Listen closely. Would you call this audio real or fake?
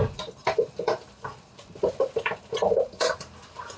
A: real